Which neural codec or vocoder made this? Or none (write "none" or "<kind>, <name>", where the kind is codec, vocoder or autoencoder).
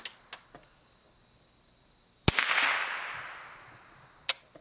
none